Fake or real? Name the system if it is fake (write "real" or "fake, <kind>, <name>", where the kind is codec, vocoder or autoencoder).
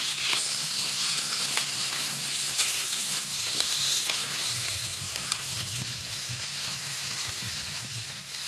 fake, codec, SNAC